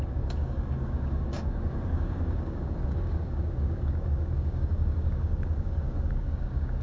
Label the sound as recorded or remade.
remade